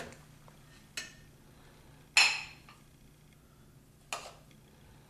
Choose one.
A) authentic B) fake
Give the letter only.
A